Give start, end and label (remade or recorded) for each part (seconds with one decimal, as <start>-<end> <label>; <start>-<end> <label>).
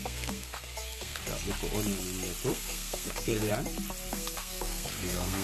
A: 0.0-1.2 remade; 1.2-2.5 recorded; 2.5-3.5 remade; 3.5-4.1 recorded; 4.1-5.4 remade